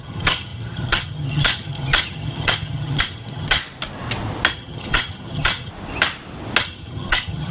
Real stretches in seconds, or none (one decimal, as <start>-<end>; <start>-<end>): 3.6-4.5; 5.7-6.6